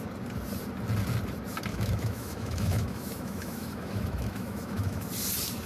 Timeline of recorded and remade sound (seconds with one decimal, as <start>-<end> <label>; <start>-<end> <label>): 0.0-1.7 recorded; 1.7-5.1 remade; 5.1-5.7 recorded

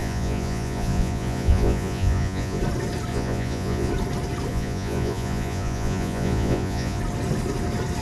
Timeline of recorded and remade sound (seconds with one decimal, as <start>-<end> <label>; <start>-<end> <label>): 0.0-2.6 remade; 2.6-3.1 recorded; 3.1-3.9 remade; 3.9-4.5 recorded; 4.5-7.0 remade; 7.0-8.0 recorded